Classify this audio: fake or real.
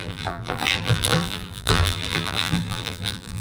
fake